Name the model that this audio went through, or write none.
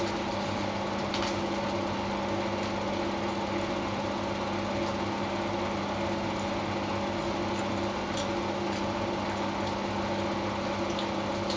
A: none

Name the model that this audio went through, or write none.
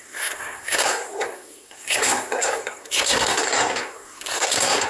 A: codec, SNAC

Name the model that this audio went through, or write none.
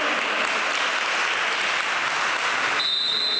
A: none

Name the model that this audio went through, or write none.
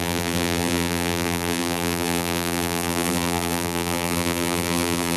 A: vocoder, BigVGAN v2